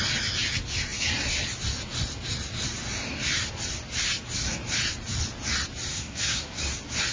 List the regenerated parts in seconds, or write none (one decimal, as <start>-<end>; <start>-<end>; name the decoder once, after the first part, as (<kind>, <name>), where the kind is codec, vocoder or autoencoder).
5.9-6.6 (codec, SNAC)